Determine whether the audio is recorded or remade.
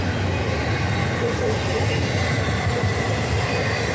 recorded